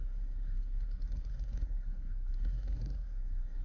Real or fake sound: fake